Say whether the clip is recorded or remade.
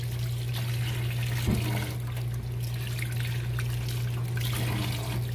recorded